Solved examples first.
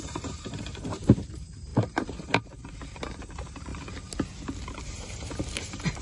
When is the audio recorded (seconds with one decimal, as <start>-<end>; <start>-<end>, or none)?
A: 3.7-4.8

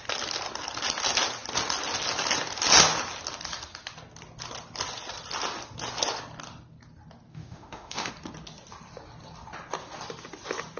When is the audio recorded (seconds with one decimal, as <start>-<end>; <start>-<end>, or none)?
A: 0.0-7.3; 8.1-10.8

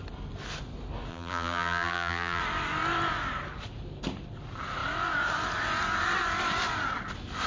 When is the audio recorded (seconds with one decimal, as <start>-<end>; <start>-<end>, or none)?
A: 0.0-1.1; 2.4-7.5